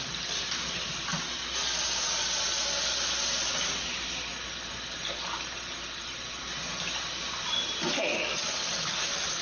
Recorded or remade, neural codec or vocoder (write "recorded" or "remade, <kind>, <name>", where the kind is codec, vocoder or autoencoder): recorded